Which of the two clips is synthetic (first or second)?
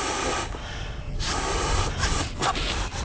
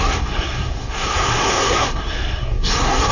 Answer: second